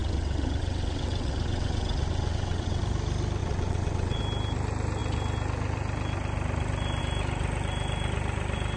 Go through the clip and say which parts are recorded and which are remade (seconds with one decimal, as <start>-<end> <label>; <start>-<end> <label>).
0.0-2.8 remade; 2.8-3.4 recorded; 3.4-4.2 remade; 4.2-8.8 recorded